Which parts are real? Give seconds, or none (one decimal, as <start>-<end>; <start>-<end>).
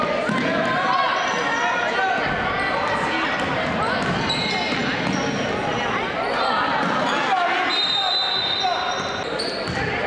0.0-10.1